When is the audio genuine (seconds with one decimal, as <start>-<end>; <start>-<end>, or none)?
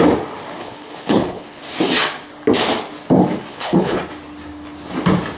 0.0-0.6; 1.6-3.5; 4.0-5.4